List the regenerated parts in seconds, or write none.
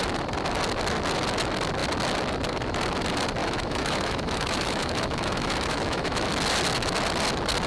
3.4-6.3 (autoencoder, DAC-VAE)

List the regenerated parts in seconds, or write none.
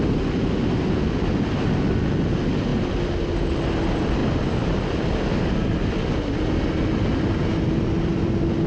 none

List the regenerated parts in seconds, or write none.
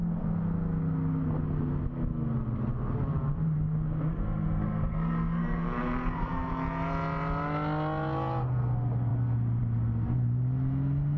4.1-6.5 (codec, SNAC)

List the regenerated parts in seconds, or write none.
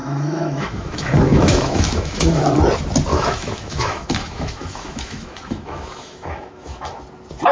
0.0-2.4 (autoencoder, DAC-VAE); 3.1-7.0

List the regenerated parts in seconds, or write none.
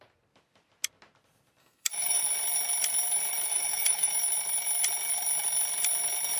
1.6-2.2 (autoencoder, DAC-VAE); 3.5-4.1